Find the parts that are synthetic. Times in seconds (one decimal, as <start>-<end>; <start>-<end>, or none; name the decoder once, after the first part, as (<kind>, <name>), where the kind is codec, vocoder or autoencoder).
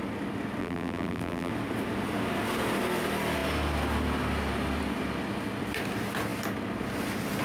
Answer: 0.6-1.5 (vocoder, BigVGAN v2)